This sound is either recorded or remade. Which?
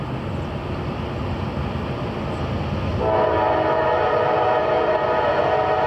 recorded